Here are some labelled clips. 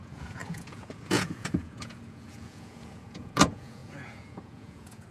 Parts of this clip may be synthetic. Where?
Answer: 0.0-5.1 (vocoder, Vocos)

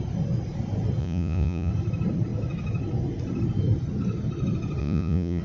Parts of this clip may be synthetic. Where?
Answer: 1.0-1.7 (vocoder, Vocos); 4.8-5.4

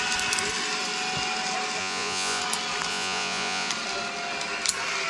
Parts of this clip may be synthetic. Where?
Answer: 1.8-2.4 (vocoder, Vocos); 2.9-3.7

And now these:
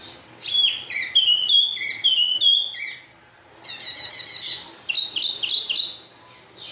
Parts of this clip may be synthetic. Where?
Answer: none

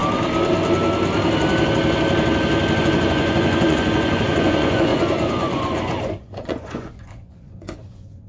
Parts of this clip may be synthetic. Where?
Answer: 2.8-8.3 (vocoder, Vocos)